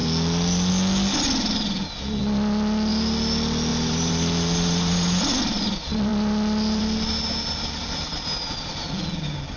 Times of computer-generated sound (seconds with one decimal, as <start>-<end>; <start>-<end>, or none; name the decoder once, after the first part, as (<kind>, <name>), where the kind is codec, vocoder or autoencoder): 3.7-5.4 (vocoder, BigVGAN v2)